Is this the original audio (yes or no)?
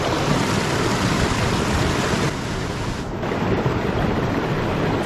yes